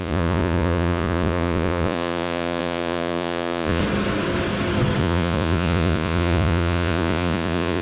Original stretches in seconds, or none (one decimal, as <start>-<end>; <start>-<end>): 3.8-5.0